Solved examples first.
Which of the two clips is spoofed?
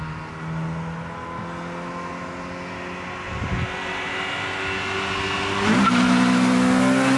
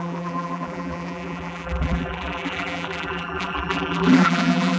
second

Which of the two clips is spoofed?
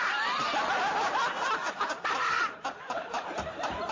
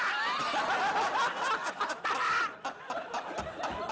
first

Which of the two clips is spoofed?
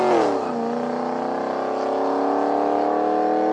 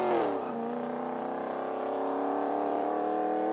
second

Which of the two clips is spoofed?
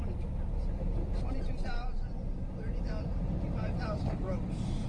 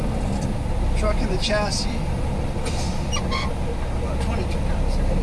first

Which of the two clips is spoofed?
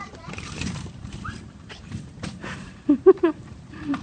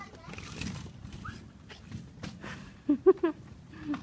first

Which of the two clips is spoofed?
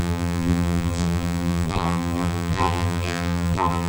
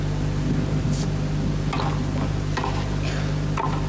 first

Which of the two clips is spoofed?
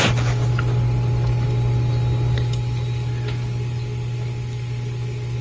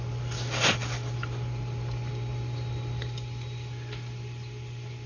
second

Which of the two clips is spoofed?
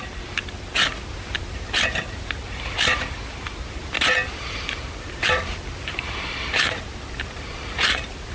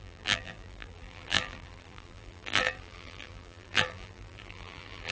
second